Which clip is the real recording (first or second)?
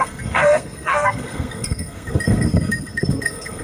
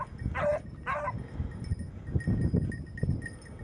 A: second